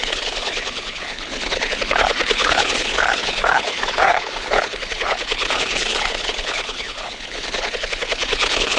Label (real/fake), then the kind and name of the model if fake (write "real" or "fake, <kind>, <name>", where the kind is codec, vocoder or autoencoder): fake, codec, HILCodec